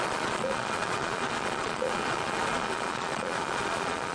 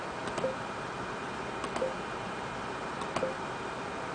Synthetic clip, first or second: first